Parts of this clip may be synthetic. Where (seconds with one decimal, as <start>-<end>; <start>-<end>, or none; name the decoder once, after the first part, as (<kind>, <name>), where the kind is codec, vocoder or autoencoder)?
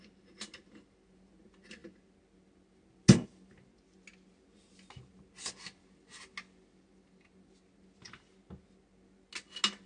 none